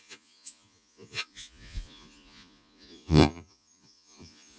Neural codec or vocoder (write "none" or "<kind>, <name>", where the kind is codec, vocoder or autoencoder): vocoder, Vocos